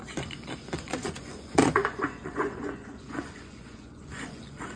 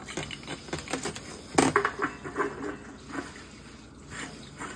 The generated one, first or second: first